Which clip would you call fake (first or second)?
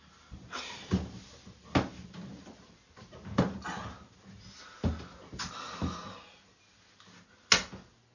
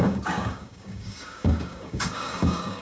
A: second